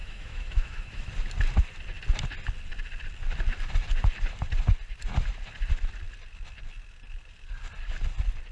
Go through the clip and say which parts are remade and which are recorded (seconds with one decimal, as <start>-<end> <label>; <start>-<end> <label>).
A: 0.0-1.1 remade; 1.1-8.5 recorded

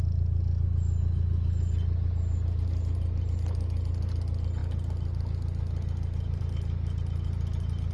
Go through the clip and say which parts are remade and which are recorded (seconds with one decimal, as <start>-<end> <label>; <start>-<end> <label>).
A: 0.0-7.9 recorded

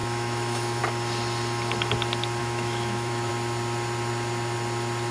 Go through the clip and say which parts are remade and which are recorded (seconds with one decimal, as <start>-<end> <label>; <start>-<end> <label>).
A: 0.0-0.8 remade; 0.8-2.4 recorded; 2.4-3.3 remade; 3.3-5.1 recorded